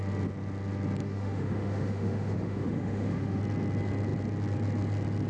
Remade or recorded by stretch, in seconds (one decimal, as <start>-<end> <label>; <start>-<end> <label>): 0.0-1.0 recorded; 1.0-3.4 remade; 3.4-5.3 recorded